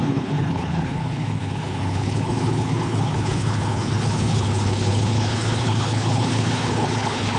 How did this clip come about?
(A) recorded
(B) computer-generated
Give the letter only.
B